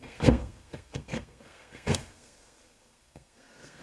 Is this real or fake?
fake